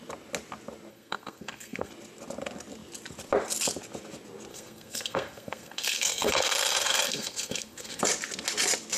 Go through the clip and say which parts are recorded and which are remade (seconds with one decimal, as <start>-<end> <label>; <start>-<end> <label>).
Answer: 0.0-0.9 recorded; 0.9-1.9 remade; 1.9-4.5 recorded; 4.5-8.0 remade; 8.0-9.0 recorded